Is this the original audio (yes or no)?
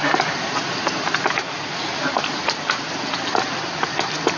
yes